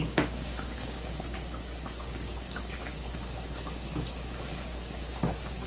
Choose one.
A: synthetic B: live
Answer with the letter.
A